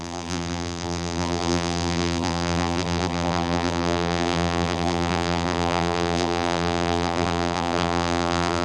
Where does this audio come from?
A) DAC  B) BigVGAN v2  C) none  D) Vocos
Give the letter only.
B